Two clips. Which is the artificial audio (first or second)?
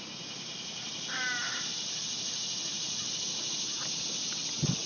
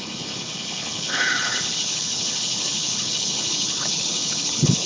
second